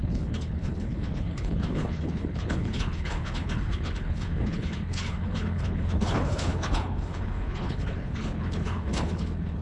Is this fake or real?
fake